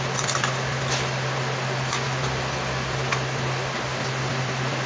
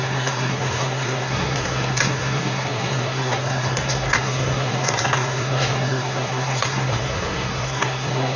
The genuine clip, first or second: first